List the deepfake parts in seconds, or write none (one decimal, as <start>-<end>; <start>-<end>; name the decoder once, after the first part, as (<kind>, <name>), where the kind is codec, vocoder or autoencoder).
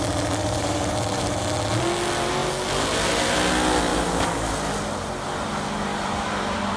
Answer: 0.4-1.4 (vocoder, BigVGAN v2); 3.9-4.5; 5.9-6.8